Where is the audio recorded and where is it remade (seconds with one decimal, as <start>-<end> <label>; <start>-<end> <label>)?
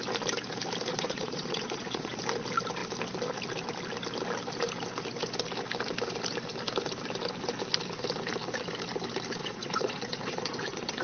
0.0-0.9 recorded; 0.9-2.2 remade; 2.2-9.4 recorded; 9.4-11.0 remade